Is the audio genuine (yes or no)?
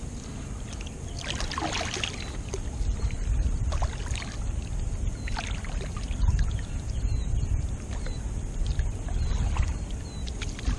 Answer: yes